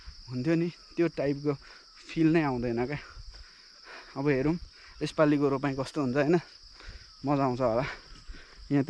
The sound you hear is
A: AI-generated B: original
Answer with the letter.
B